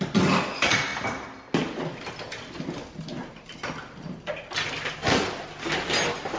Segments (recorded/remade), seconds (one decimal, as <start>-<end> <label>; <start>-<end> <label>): 0.0-6.4 recorded